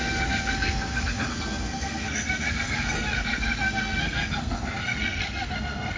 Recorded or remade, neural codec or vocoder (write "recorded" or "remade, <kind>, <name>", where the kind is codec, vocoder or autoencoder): remade, codec, SNAC